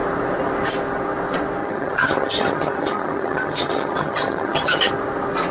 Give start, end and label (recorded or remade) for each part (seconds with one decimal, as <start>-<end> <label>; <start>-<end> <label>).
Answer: 0.0-1.6 recorded; 1.6-4.9 remade; 4.9-5.5 recorded